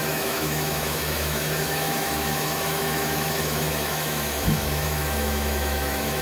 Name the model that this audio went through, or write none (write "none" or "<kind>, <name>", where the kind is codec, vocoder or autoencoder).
autoencoder, DAC-VAE